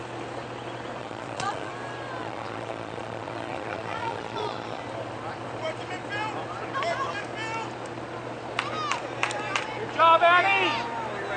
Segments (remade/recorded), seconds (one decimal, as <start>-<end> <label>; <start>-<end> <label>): 0.0-1.0 recorded; 1.0-1.7 remade; 1.7-2.2 recorded; 2.2-4.8 remade; 4.8-11.4 recorded